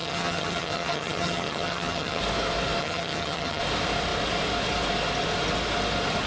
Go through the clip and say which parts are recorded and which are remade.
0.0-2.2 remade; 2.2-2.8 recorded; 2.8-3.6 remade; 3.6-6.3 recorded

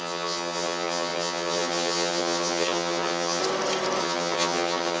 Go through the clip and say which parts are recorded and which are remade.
0.0-3.4 remade; 3.4-4.0 recorded; 4.0-5.0 remade

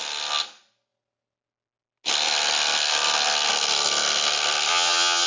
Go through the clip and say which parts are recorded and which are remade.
0.0-4.7 recorded; 4.7-5.3 remade

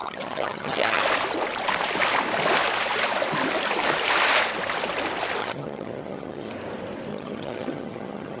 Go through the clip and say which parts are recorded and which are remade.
0.0-1.0 remade; 1.0-5.4 recorded; 5.4-6.5 remade; 6.5-7.1 recorded; 7.1-8.4 remade

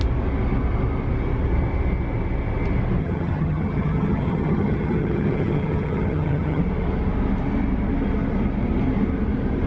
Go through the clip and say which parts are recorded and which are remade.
0.0-3.0 recorded; 3.0-6.6 remade; 6.6-9.7 recorded

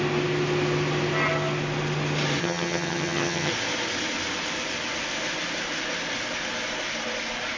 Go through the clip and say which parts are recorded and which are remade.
0.0-2.4 recorded; 2.4-3.5 remade; 3.5-7.6 recorded

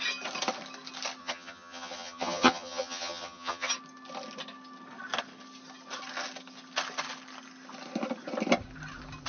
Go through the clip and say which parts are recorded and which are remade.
0.0-1.2 recorded; 1.2-3.7 remade; 3.7-9.3 recorded

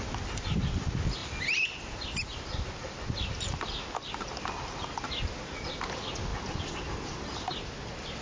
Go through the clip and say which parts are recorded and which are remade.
0.0-8.2 recorded